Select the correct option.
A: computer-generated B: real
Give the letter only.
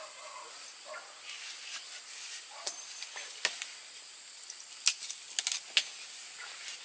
B